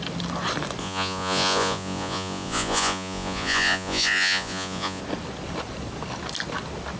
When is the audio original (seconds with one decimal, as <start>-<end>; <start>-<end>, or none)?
0.0-0.8; 5.0-7.0